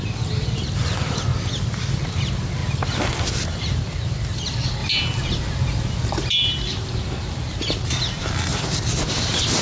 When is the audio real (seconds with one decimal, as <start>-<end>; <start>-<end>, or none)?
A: 1.3-2.0; 2.6-3.3; 4.8-6.3